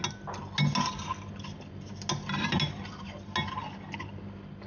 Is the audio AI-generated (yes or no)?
no